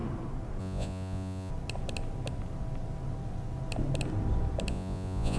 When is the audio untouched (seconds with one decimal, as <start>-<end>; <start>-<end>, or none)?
0.0-0.6; 1.5-4.7